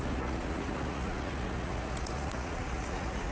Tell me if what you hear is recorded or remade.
remade